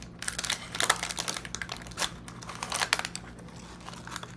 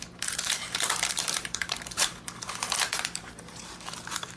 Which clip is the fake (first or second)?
second